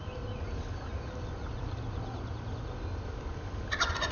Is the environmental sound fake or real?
real